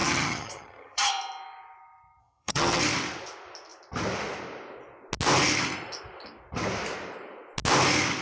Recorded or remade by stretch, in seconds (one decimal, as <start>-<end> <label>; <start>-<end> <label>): 0.0-1.1 remade; 1.1-2.2 recorded; 2.2-2.8 remade; 2.8-8.2 recorded